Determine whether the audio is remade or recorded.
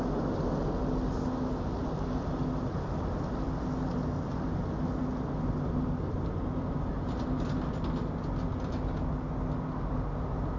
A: recorded